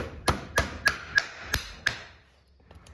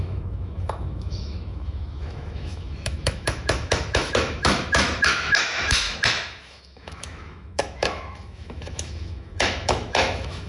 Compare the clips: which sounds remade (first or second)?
second